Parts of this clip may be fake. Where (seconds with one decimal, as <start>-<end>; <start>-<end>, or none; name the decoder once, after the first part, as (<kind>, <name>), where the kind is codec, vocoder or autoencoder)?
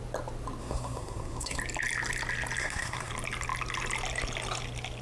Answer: 0.6-1.6 (codec, SNAC); 2.6-3.1